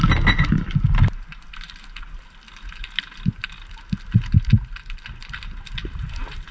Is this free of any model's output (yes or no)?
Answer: yes